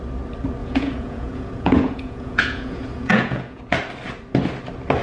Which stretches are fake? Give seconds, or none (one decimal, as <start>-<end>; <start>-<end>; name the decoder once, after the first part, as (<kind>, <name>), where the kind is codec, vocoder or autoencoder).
0.6-3.6 (vocoder, Vocos)